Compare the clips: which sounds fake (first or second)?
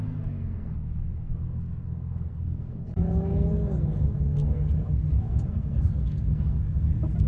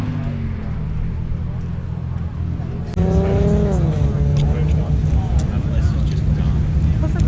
first